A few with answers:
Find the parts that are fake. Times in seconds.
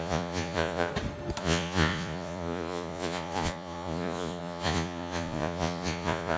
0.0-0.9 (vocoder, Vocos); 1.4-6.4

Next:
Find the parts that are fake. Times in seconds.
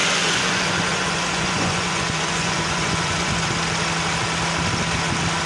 0.0-3.3 (vocoder, Vocos)